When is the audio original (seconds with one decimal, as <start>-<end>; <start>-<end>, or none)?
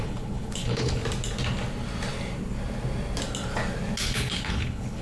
1.0-4.0